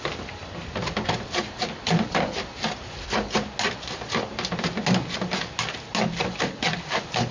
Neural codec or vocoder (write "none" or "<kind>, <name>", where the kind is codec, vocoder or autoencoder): none